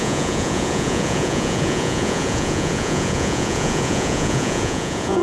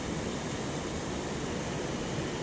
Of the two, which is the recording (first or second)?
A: second